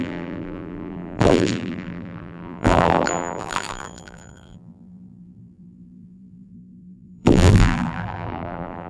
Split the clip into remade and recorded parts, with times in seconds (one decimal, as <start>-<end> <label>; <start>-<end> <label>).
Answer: 0.0-8.9 remade